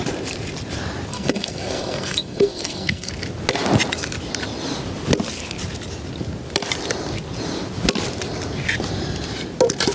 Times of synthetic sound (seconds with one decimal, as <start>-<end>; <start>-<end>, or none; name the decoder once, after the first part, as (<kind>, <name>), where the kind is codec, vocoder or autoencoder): 1.1-3.1 (codec, SNAC)